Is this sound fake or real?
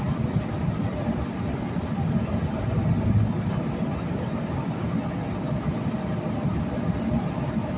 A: real